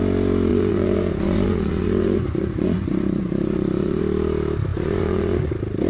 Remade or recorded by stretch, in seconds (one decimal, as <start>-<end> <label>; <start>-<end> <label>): 0.0-0.5 recorded; 0.5-4.0 remade; 4.0-4.7 recorded; 4.7-5.5 remade; 5.5-5.9 recorded